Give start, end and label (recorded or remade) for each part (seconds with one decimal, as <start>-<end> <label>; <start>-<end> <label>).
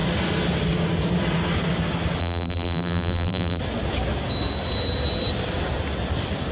0.0-2.2 recorded; 2.2-3.6 remade; 3.6-6.5 recorded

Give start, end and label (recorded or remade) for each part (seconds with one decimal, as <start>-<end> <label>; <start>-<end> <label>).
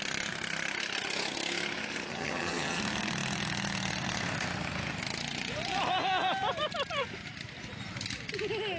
0.0-2.1 recorded; 2.1-2.8 remade; 2.8-8.8 recorded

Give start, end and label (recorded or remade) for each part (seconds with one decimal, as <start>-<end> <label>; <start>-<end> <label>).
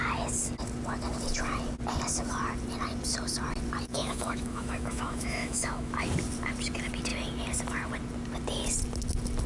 0.0-3.9 recorded; 3.9-5.9 remade; 5.9-9.5 recorded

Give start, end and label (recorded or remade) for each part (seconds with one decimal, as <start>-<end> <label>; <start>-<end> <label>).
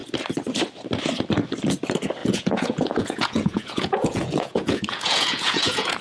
0.0-2.2 recorded; 2.2-6.0 remade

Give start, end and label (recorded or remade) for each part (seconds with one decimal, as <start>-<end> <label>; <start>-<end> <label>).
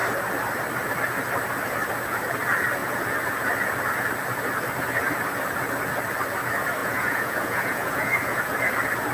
0.0-6.8 recorded; 6.8-8.4 remade; 8.4-9.1 recorded